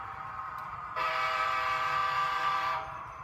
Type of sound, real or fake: fake